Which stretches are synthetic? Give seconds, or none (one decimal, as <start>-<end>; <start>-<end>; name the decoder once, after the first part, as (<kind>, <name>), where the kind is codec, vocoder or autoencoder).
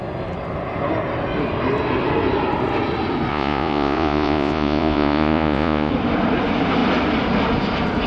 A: 3.3-5.9 (vocoder, Vocos)